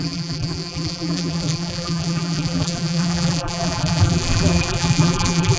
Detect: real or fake fake